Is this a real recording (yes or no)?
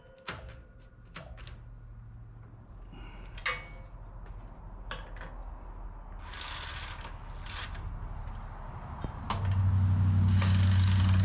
yes